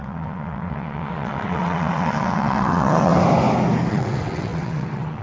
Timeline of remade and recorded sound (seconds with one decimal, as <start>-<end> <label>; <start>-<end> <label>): 0.0-3.1 remade; 3.1-3.9 recorded; 3.9-5.2 remade